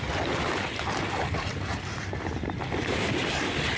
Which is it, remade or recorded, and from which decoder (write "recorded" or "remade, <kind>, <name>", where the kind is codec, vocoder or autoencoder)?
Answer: recorded